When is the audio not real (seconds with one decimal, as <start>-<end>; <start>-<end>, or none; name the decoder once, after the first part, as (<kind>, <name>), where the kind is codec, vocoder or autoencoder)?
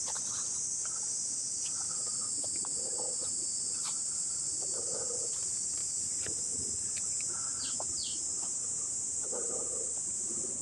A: none